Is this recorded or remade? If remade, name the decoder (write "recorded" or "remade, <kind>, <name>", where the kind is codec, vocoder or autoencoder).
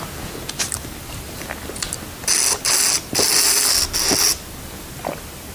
recorded